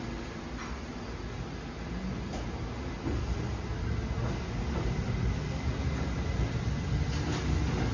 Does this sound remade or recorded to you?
recorded